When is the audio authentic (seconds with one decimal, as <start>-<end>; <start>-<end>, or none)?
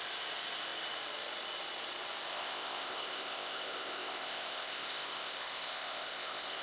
0.0-2.3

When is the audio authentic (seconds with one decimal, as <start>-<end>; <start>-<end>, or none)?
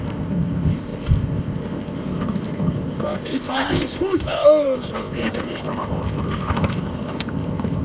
none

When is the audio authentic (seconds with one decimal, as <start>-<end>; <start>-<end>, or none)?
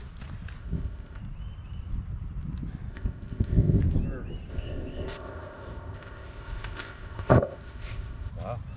0.0-0.6; 1.2-2.9; 3.8-4.5; 8.3-8.8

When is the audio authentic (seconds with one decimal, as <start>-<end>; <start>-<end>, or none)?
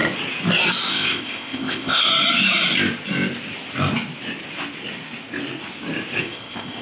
0.0-0.9; 2.1-6.2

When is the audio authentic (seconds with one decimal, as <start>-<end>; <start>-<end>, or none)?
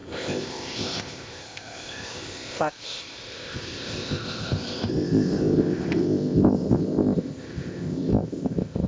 none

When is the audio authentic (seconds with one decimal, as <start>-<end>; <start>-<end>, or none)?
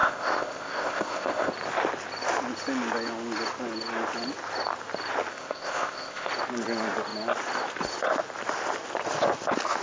1.5-5.3; 6.3-9.8